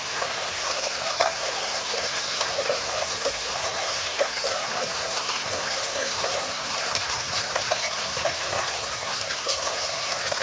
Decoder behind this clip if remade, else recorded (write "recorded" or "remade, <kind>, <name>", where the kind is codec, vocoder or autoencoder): remade, codec, SNAC